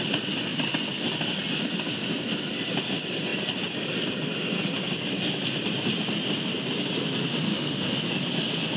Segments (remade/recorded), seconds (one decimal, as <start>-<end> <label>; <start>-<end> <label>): 0.0-7.5 recorded; 7.5-8.0 remade; 8.0-8.8 recorded